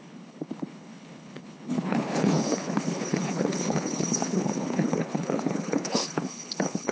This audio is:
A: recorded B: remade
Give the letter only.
B